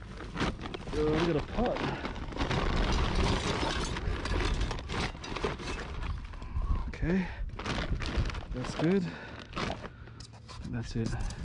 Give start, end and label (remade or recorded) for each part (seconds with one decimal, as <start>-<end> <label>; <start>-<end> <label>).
0.0-11.4 recorded